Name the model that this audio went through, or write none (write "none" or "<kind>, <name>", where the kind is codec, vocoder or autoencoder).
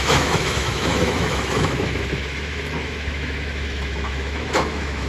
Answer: autoencoder, DAC-VAE